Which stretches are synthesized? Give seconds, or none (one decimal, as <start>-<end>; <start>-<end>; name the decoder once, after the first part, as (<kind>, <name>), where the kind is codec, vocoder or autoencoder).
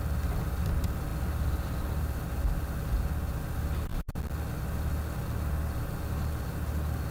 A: none